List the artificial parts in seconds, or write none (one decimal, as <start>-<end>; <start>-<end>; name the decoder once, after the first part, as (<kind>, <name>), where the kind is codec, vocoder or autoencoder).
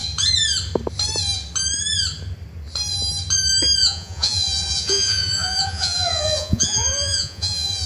3.8-7.9 (vocoder, Vocos)